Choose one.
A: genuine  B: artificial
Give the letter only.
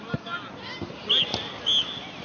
A